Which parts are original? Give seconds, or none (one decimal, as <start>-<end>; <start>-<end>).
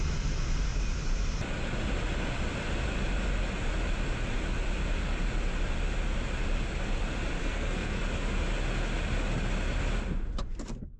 0.0-7.4; 8.0-11.0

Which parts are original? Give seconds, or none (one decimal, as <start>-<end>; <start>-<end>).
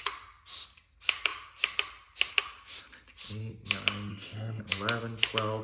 0.0-4.1; 4.6-5.6